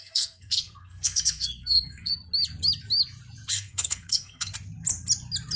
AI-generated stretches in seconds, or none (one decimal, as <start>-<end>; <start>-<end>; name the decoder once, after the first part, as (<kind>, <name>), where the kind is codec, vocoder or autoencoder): 0.0-2.1 (codec, SNAC); 3.5-4.5